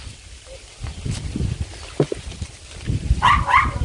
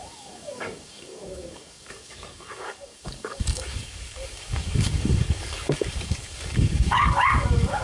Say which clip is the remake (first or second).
second